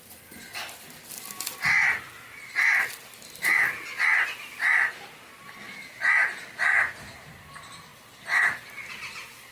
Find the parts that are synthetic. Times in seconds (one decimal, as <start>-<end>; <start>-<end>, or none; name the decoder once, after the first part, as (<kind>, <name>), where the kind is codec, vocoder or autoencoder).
none